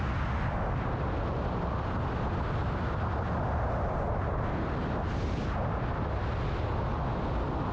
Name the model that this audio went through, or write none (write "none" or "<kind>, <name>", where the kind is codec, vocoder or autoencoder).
none